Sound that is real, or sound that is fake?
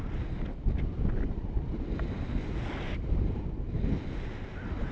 real